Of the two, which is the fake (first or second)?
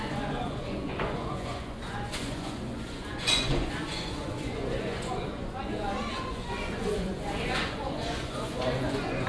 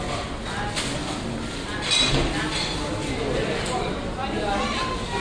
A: first